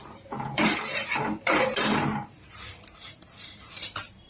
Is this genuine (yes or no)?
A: no